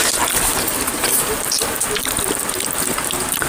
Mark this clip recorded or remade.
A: recorded